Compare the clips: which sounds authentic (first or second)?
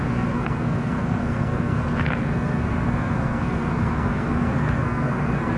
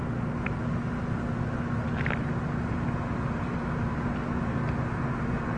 second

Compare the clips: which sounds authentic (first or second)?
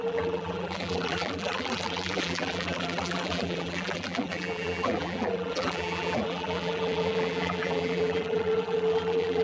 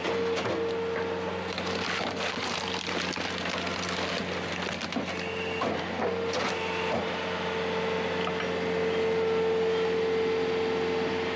second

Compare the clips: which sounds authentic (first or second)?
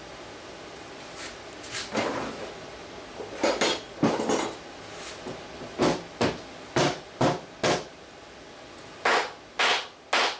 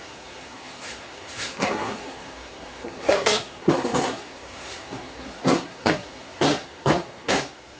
first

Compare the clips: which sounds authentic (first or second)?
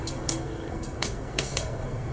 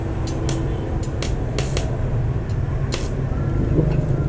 second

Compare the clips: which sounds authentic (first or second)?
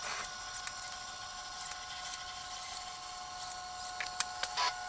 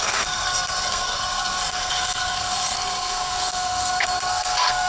first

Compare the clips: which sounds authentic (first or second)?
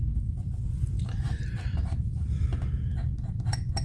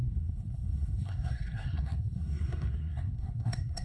first